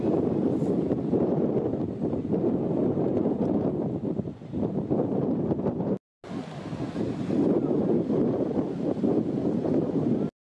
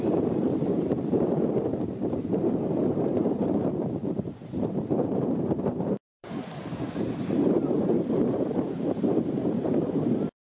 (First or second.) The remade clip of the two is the second